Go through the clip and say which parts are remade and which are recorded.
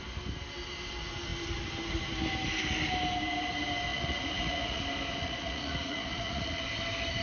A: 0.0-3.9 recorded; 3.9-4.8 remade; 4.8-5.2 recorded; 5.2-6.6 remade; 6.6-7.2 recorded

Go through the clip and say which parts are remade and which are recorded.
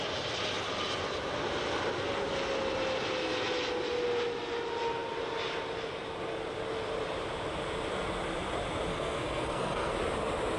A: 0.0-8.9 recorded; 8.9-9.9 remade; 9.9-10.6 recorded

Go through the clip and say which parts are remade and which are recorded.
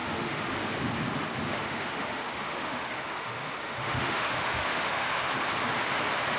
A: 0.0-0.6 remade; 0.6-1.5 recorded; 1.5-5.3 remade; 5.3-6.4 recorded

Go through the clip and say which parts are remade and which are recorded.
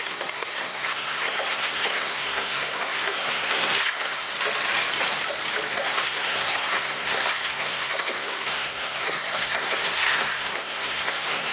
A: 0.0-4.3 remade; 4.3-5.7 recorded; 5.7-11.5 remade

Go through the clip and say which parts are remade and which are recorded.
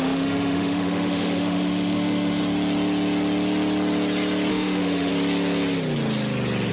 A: 0.0-2.4 remade; 2.4-4.5 recorded; 4.5-5.1 remade; 5.1-6.7 recorded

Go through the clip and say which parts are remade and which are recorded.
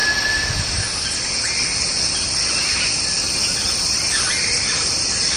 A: 0.0-5.4 recorded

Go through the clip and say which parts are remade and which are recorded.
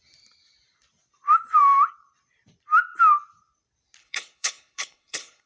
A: 0.0-4.0 recorded; 4.0-5.5 remade